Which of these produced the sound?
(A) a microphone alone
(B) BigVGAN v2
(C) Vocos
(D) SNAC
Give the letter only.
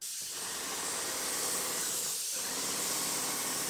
A